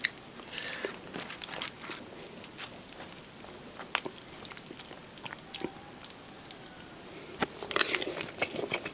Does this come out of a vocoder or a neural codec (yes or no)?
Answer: no